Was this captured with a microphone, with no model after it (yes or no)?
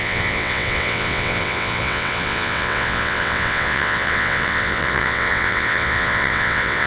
no